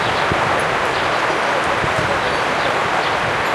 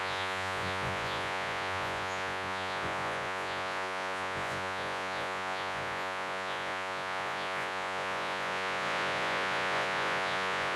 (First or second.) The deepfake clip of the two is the second